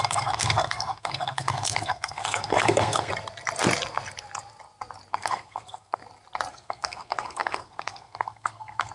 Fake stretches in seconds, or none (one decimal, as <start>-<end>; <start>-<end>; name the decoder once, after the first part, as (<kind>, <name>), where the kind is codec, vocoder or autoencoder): 0.0-3.1 (codec, SNAC); 5.1-6.0; 6.5-8.9